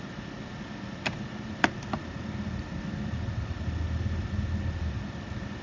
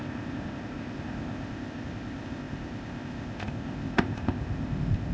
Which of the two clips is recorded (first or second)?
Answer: first